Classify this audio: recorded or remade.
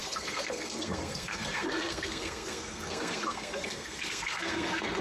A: remade